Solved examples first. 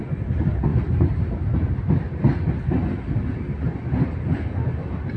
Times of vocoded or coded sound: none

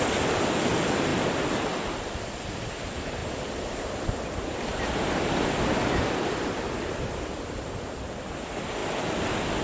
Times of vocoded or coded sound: 1.1-2.8; 3.2-7.6; 8.8-9.6

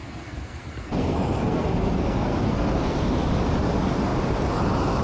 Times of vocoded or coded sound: 0.0-3.0

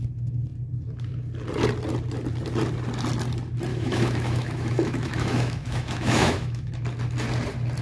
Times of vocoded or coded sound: 3.7-6.7